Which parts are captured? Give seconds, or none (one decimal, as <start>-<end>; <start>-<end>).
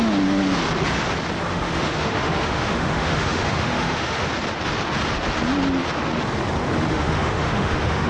0.0-1.5; 4.3-6.9